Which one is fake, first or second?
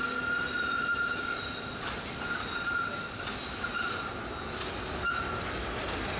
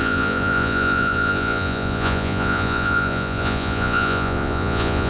second